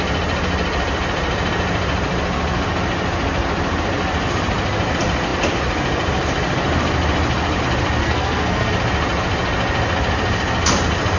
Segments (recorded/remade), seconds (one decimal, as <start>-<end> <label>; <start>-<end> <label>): 0.0-8.0 recorded; 8.0-8.7 remade; 8.7-11.2 recorded